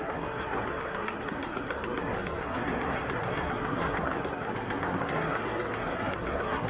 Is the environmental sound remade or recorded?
remade